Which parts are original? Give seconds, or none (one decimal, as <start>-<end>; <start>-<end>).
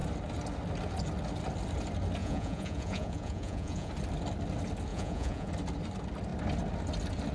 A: 0.0-2.2; 3.9-4.9; 5.5-7.3